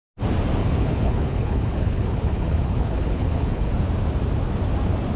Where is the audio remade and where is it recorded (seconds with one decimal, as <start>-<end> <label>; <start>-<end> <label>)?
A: 0.0-0.6 recorded; 0.6-3.7 remade; 3.7-5.2 recorded